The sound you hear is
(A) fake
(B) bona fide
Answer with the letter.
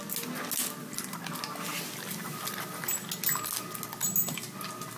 B